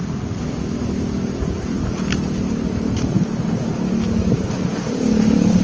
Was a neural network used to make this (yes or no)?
no